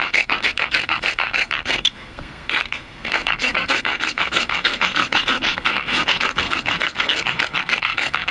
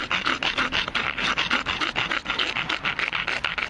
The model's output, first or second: first